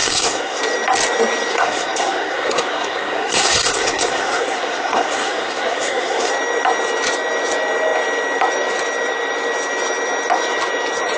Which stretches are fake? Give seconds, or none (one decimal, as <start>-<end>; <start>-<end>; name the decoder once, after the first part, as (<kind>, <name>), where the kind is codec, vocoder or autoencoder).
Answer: 0.0-0.6 (codec, SNAC); 1.5-6.3

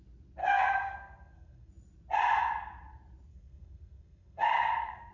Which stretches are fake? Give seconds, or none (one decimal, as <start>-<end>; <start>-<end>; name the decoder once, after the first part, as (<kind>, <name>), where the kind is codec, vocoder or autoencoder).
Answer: 0.4-1.7 (codec, SNAC); 3.3-5.1

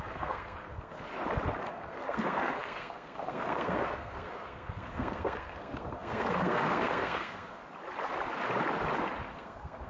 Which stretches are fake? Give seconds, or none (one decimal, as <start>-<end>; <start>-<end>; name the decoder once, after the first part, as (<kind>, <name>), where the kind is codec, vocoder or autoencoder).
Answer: 0.0-1.1 (codec, SNAC); 1.7-7.6; 9.3-9.9

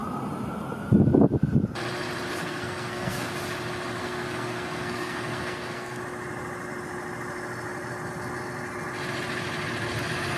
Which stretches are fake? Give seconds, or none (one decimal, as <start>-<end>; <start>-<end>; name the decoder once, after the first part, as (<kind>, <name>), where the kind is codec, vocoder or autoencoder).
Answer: 2.4-3.3 (codec, SNAC); 4.0-6.0

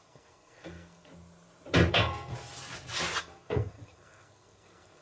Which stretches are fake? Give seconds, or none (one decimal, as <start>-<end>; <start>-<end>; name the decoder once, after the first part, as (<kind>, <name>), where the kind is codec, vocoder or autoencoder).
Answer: 0.0-1.1 (codec, SNAC); 1.9-2.3; 3.2-5.0

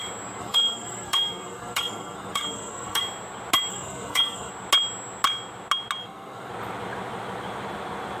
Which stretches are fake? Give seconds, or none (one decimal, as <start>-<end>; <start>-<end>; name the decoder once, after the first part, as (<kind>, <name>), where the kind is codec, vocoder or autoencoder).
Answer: 0.4-3.0 (codec, SNAC); 3.7-4.5; 6.0-6.5